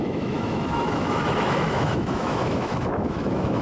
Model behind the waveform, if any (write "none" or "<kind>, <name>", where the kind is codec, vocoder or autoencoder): autoencoder, DAC-VAE